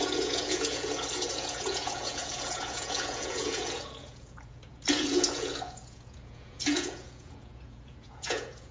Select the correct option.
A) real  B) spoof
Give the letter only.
B